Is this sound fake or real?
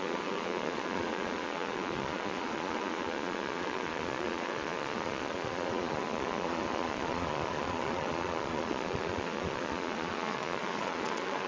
fake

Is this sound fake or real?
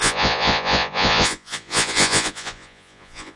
fake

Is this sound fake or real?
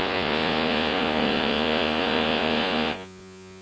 fake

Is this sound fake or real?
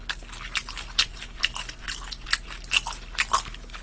real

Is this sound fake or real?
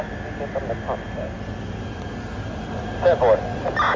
real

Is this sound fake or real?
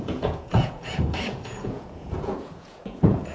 fake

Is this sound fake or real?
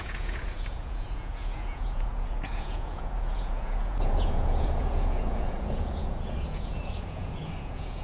fake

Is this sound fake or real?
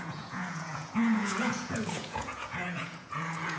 fake